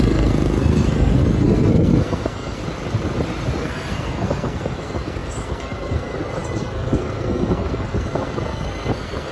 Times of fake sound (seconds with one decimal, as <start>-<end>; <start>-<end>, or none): 0.0-2.6; 3.6-9.3